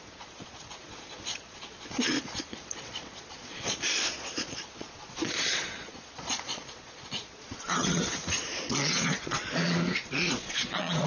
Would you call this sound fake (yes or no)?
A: yes